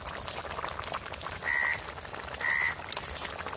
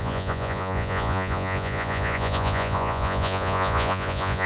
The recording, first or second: first